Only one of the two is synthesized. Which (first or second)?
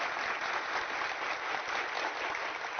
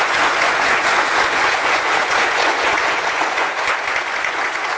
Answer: second